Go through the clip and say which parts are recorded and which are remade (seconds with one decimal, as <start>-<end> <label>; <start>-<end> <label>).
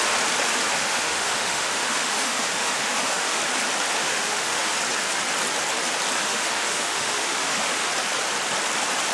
0.0-0.8 recorded; 0.8-3.4 remade; 3.4-4.0 recorded; 4.0-4.7 remade; 4.7-6.2 recorded; 6.2-7.9 remade; 7.9-9.1 recorded